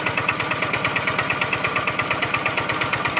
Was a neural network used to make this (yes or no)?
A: no